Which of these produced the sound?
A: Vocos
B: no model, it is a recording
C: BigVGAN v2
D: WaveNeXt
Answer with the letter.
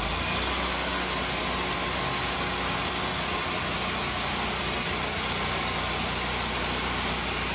B